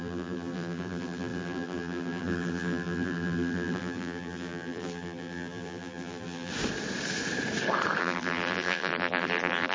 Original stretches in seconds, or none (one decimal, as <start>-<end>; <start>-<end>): 6.5-8.0